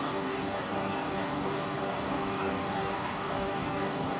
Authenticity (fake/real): fake